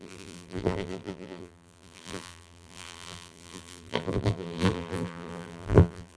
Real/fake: fake